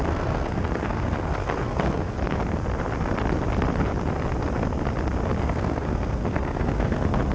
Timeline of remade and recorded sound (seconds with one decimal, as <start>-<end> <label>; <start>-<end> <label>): 0.0-2.2 remade; 2.2-5.4 recorded; 5.4-7.3 remade